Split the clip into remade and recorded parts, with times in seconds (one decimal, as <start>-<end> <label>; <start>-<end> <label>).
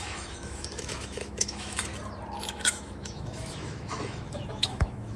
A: 0.0-1.9 remade; 1.9-2.4 recorded; 2.4-5.2 remade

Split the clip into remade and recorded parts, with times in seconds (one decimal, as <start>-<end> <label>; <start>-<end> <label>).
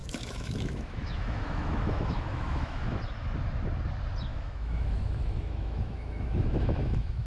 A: 0.0-3.0 remade; 3.0-4.3 recorded; 4.3-7.3 remade